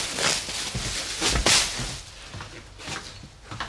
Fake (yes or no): no